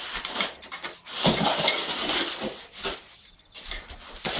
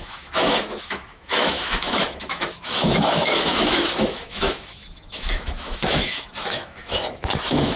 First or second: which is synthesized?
second